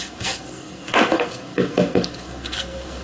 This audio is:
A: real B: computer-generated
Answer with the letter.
B